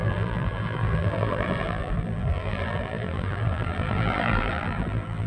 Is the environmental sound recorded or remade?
remade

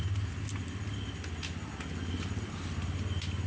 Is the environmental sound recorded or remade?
recorded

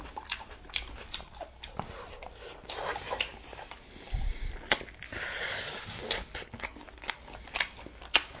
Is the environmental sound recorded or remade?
recorded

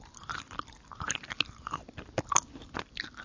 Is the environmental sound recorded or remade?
remade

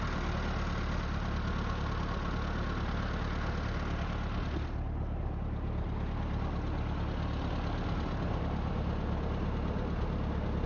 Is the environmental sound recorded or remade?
recorded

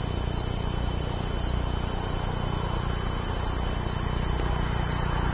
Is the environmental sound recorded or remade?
recorded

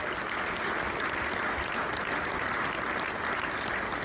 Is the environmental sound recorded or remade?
recorded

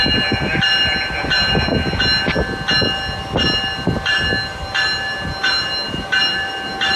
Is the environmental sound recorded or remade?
recorded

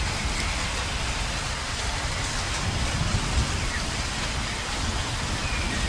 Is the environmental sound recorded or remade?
recorded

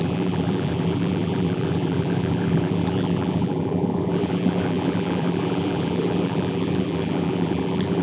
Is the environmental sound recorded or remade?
remade